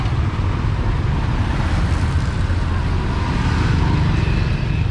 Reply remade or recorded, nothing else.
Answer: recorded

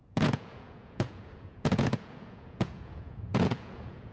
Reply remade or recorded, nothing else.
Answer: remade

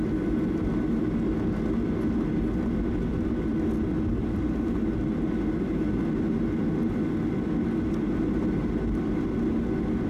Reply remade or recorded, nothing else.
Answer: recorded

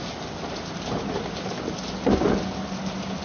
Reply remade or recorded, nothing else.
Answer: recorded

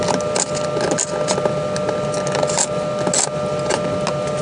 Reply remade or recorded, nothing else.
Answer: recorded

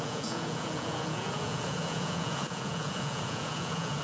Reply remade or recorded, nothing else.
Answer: remade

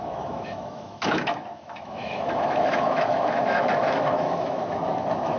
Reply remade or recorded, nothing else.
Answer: remade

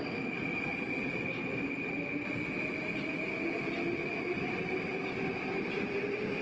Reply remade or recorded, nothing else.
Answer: recorded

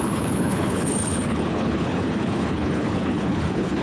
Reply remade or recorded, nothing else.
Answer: remade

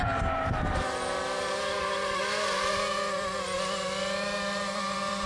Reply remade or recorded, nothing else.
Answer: remade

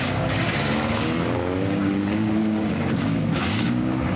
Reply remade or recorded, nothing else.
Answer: remade